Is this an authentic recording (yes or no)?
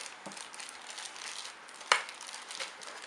yes